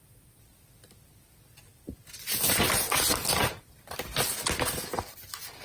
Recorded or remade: recorded